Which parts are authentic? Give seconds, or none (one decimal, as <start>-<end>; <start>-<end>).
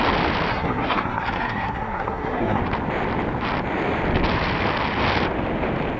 0.0-0.5; 2.6-6.0